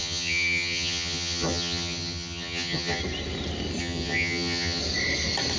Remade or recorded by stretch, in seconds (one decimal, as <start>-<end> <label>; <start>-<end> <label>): 0.0-3.0 remade; 3.0-3.8 recorded; 3.8-4.8 remade; 4.8-5.6 recorded